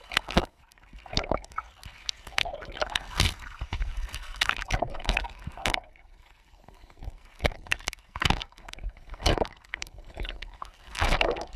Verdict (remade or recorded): remade